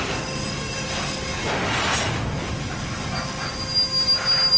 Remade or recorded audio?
recorded